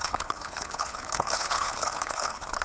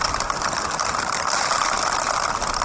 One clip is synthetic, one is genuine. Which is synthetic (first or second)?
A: first